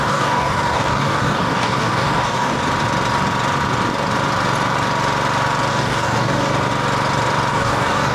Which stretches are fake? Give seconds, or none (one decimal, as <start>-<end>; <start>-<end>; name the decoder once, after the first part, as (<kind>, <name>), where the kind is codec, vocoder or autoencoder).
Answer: 0.0-2.6 (codec, DAC); 5.7-6.5; 7.5-8.1

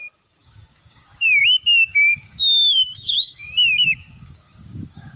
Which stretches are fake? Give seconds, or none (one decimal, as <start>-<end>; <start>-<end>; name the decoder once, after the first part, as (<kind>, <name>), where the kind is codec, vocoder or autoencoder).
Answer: 0.4-1.4 (codec, DAC); 1.9-5.2

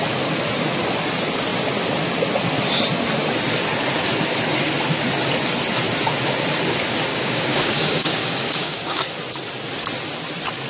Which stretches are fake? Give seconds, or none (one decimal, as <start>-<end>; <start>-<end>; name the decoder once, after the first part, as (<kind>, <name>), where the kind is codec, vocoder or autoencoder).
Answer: 7.1-9.1 (codec, DAC)